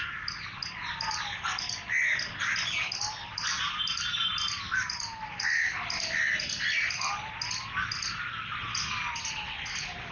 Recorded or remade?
recorded